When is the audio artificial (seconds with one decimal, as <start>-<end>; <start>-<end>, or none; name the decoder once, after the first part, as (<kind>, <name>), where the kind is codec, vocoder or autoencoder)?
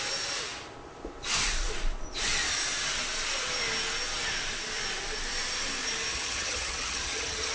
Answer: 6.1-7.5 (vocoder, HiFi-GAN)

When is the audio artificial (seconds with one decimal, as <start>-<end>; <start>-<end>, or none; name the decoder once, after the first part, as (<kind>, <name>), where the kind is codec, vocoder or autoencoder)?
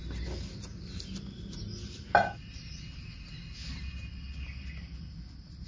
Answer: none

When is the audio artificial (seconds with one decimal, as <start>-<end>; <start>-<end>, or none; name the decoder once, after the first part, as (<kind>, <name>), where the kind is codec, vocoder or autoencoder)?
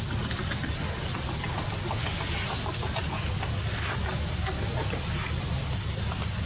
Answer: none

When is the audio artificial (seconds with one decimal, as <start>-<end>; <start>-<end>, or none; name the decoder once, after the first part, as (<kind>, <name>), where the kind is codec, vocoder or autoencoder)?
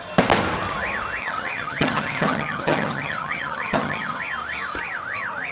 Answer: 1.2-4.2 (vocoder, HiFi-GAN)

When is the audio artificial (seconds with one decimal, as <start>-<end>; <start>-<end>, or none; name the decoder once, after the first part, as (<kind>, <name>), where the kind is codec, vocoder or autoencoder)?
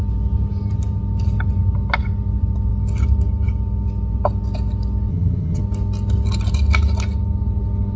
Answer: 5.1-5.6 (vocoder, HiFi-GAN)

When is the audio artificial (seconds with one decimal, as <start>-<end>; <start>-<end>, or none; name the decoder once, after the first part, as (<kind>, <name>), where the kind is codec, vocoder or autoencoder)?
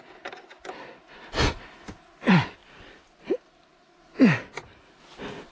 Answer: none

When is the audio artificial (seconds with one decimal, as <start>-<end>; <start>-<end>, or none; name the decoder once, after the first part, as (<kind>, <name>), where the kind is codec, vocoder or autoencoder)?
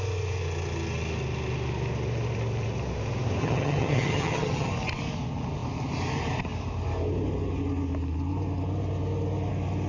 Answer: 3.4-4.7 (vocoder, HiFi-GAN)